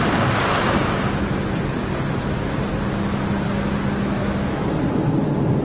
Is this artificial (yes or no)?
no